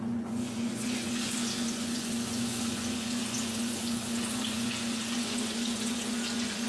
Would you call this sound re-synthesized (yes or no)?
yes